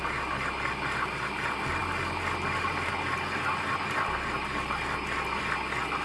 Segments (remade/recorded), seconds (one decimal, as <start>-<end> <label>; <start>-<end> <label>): 0.0-6.0 recorded